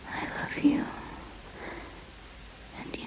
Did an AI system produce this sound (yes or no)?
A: no